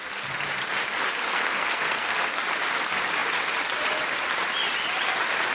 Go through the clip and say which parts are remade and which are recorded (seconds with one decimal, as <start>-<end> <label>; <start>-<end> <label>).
0.0-1.3 recorded; 1.3-2.4 remade; 2.4-5.5 recorded